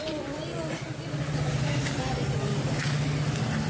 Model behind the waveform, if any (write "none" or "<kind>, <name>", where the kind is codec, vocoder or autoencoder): none